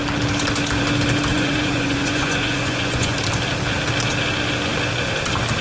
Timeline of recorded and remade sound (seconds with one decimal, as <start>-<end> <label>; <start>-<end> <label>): 0.0-1.3 recorded; 1.3-3.2 remade; 3.2-5.6 recorded